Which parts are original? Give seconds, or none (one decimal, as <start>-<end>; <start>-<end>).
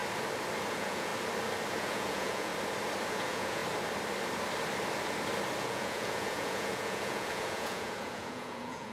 0.0-0.7; 1.1-1.8; 2.5-3.1; 3.6-5.6